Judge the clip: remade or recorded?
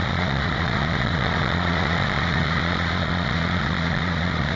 remade